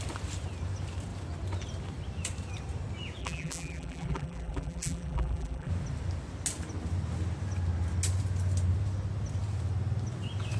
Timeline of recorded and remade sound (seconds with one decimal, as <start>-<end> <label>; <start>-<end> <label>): 0.0-3.2 recorded; 3.2-5.7 remade; 5.7-10.6 recorded